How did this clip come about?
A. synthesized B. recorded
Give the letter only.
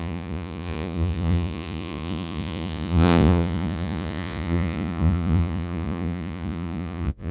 A